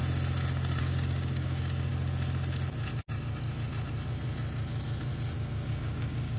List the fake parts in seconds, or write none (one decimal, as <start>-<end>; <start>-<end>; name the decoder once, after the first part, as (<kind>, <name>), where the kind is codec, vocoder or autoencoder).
0.8-1.9 (codec, DAC); 5.7-6.4